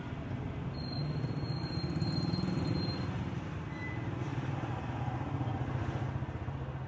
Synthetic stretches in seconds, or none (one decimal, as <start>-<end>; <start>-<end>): 4.3-5.0